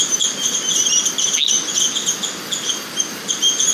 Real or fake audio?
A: real